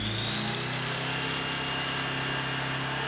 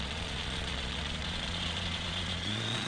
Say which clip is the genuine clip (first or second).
first